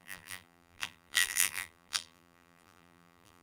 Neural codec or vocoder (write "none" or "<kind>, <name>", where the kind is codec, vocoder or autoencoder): vocoder, BigVGAN v2